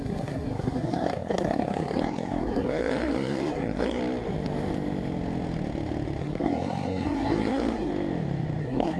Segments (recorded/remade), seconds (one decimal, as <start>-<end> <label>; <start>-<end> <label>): 0.0-4.0 remade; 4.0-6.2 recorded; 6.2-7.9 remade; 7.9-8.6 recorded; 8.6-9.0 remade